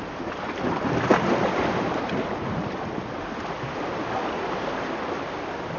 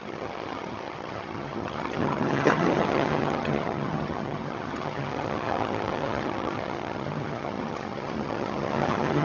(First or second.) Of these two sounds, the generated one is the second